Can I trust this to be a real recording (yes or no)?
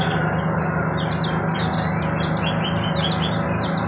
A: yes